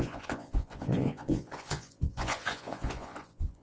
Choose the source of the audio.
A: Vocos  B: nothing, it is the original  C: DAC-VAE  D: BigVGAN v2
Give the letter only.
A